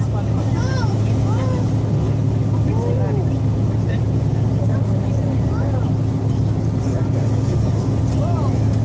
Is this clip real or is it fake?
real